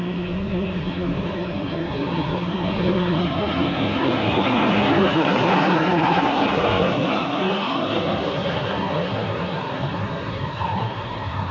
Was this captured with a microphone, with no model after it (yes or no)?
no